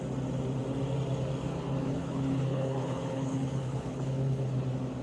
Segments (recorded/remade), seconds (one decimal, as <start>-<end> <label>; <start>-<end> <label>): 0.0-1.8 recorded; 1.8-4.5 remade; 4.5-5.0 recorded